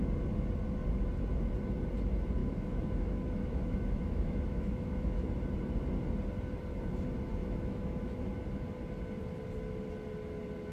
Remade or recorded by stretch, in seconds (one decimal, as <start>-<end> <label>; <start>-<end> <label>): 0.0-2.4 recorded; 2.4-5.3 remade; 5.3-7.4 recorded; 7.4-8.2 remade; 8.2-10.7 recorded